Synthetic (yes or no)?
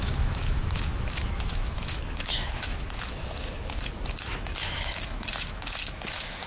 yes